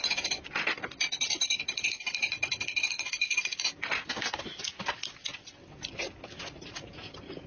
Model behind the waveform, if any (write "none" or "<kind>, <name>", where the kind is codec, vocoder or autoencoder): none